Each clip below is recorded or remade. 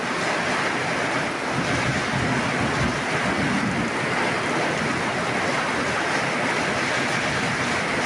recorded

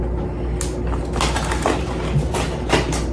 recorded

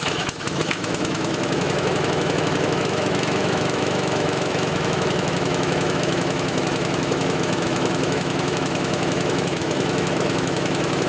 remade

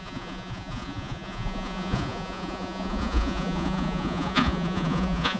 remade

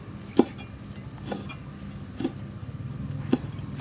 recorded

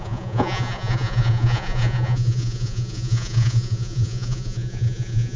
remade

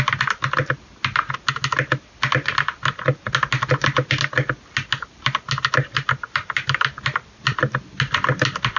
recorded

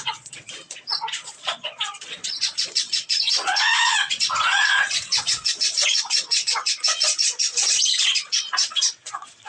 remade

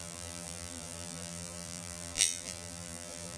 remade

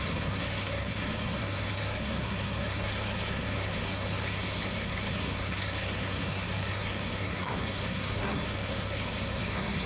remade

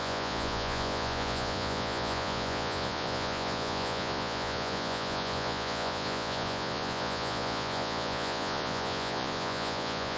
remade